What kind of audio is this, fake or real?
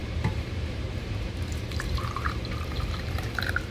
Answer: fake